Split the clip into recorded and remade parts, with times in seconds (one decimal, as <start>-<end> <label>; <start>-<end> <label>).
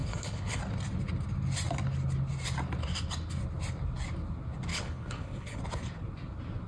0.0-0.6 remade; 0.6-4.7 recorded; 4.7-5.6 remade; 5.6-6.7 recorded